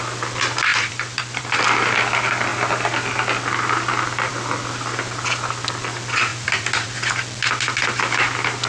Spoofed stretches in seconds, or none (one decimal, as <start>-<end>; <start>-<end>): 0.7-1.6; 6.3-7.1